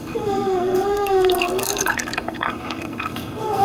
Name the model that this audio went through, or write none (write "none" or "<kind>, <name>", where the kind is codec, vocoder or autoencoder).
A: codec, SNAC